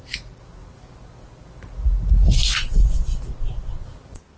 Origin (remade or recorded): recorded